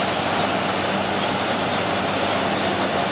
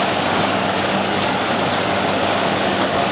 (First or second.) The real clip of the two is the first